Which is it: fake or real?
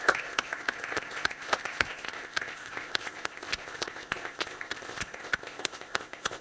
fake